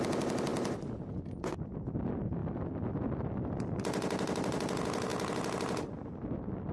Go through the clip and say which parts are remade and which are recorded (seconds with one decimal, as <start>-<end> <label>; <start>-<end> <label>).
0.0-6.7 recorded